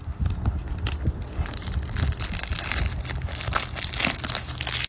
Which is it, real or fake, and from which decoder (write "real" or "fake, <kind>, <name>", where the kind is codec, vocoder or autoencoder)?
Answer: real